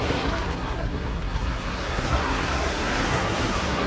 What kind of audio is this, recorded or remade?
remade